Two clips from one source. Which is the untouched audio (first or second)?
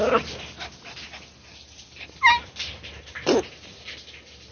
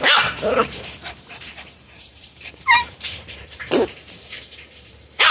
first